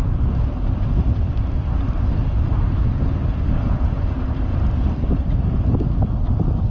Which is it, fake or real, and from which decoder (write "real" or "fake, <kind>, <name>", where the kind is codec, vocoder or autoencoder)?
fake, vocoder, BigVGAN v2